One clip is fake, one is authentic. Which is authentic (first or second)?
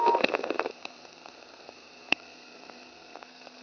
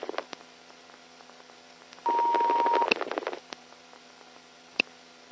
second